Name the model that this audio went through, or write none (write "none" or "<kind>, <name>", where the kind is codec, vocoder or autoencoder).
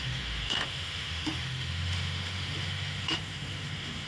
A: autoencoder, DAC-VAE